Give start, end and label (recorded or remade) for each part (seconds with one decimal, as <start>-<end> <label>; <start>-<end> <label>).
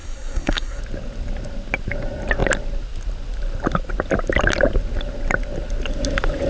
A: 0.0-0.8 remade; 0.8-6.5 recorded